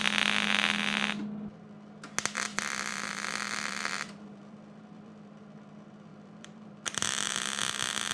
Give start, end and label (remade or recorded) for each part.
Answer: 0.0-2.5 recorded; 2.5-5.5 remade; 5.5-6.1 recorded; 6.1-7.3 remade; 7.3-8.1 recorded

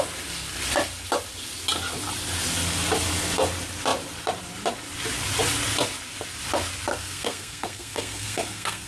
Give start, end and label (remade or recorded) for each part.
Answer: 0.0-6.9 recorded; 6.9-8.9 remade

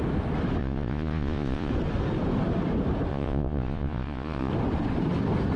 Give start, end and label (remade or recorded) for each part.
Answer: 0.0-0.6 recorded; 0.6-1.7 remade; 1.7-3.1 recorded; 3.1-4.5 remade; 4.5-5.6 recorded

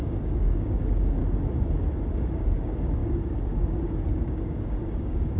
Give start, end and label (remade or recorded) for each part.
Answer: 0.0-1.2 remade; 1.2-2.1 recorded; 2.1-5.4 remade